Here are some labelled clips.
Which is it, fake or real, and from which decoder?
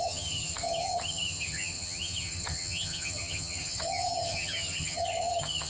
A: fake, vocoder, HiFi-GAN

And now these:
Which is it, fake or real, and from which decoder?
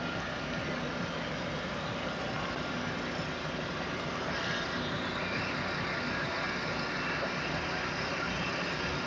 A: real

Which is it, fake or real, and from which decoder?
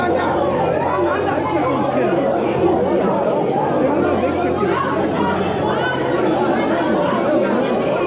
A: real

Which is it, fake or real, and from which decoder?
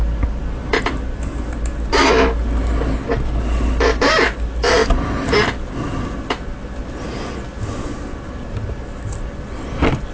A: real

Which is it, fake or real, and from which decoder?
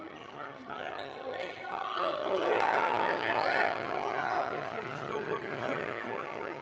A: fake, vocoder, HiFi-GAN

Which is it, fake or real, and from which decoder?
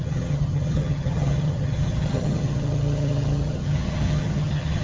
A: fake, vocoder, HiFi-GAN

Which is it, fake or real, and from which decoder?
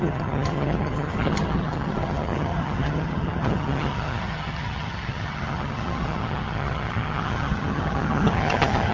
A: fake, vocoder, HiFi-GAN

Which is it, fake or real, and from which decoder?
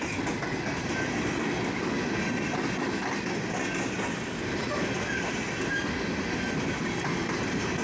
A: real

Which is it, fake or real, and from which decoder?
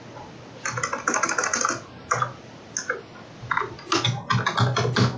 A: real